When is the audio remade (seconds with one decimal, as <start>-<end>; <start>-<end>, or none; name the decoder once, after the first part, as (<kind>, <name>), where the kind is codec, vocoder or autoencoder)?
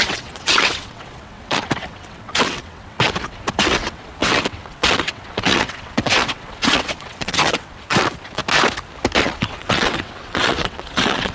0.0-8.4 (vocoder, WaveNeXt); 9.2-11.3